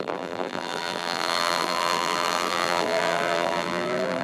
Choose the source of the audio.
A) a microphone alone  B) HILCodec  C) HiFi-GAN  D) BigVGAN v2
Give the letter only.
D